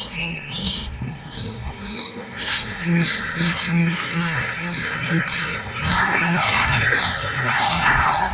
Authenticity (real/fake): fake